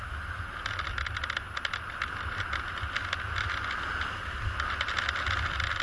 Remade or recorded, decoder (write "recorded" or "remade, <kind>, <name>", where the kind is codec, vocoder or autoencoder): recorded